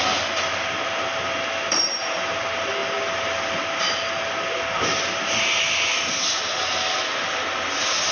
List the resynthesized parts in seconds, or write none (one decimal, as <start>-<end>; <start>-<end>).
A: none